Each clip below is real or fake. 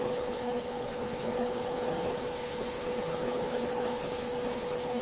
fake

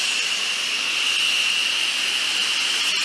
real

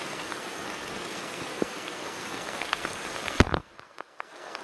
fake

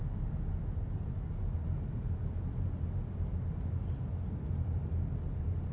real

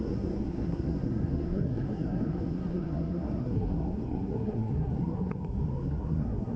fake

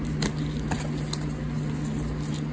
real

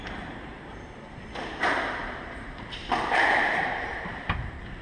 fake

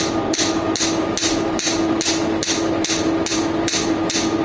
real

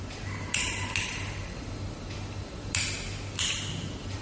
real